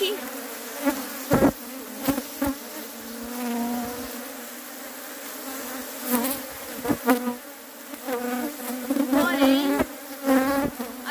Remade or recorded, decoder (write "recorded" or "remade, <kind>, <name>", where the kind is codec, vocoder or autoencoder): recorded